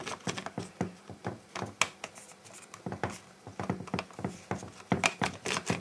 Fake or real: real